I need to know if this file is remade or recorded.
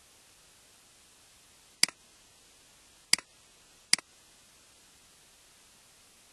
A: recorded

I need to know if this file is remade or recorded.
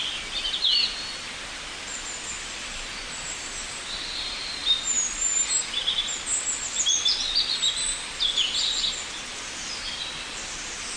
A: recorded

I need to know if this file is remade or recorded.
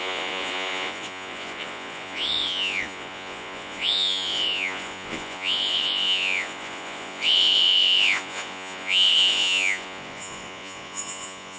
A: remade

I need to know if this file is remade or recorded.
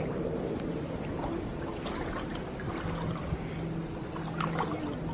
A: recorded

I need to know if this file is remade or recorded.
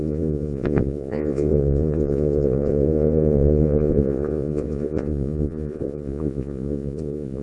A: remade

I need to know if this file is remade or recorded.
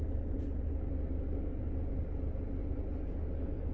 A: recorded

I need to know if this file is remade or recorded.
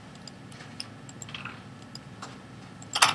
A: recorded